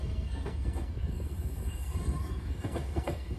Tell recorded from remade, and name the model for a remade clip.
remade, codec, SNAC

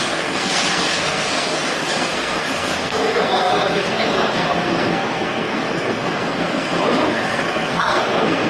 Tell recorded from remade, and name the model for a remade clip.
remade, codec, SNAC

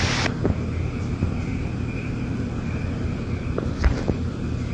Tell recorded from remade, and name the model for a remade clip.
recorded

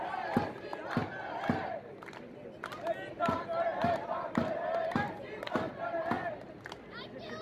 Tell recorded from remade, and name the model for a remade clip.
recorded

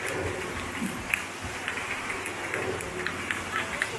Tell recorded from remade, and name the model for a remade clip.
recorded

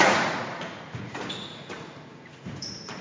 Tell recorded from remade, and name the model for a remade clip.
remade, vocoder, Vocos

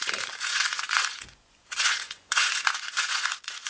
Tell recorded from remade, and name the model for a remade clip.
remade, vocoder, Vocos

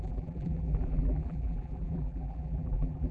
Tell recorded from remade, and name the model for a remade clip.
remade, vocoder, BigVGAN v2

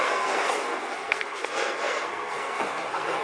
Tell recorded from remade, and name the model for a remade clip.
remade, codec, SNAC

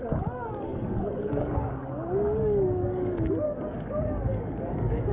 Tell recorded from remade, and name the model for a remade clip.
remade, codec, DAC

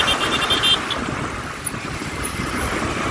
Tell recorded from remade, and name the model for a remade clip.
recorded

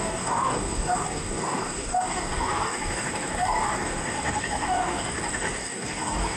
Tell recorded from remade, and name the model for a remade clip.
remade, codec, DAC